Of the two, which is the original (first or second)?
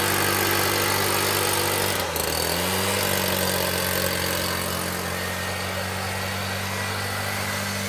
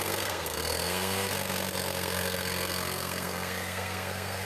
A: first